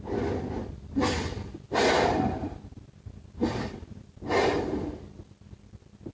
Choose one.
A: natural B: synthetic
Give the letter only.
A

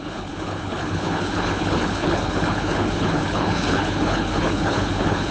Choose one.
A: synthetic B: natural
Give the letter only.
A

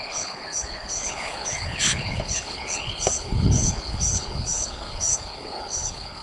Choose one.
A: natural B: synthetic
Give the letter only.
B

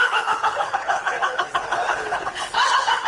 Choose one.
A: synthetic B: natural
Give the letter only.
A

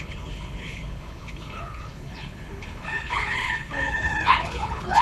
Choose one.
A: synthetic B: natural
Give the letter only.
A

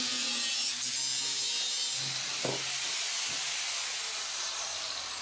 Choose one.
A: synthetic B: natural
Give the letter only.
B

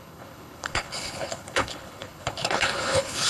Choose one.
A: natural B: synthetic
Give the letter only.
B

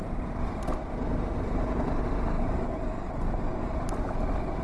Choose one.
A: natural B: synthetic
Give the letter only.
A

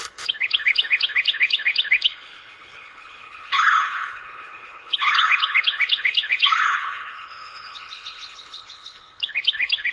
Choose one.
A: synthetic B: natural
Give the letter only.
A